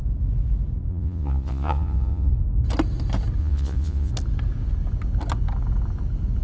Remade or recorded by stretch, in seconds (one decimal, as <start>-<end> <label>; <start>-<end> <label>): 0.0-0.9 recorded; 0.9-2.3 remade; 2.3-3.4 recorded; 3.4-4.1 remade; 4.1-6.4 recorded